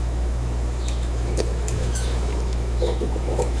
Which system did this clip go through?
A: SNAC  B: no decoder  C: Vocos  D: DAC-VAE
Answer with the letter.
D